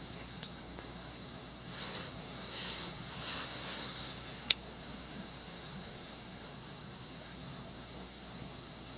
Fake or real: fake